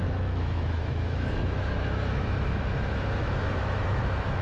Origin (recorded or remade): remade